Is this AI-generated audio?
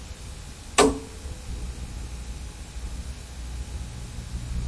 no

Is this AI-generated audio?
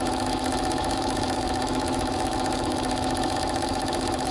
yes